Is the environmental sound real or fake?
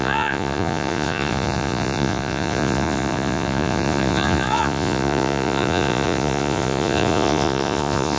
fake